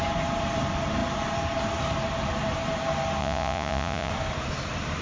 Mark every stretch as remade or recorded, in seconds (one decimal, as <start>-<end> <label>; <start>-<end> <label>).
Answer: 0.0-3.2 recorded; 3.2-4.1 remade; 4.1-5.0 recorded